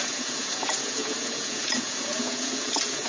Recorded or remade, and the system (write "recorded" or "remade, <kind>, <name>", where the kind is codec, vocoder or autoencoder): remade, vocoder, Vocos